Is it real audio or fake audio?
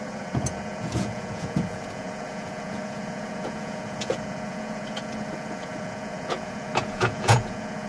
fake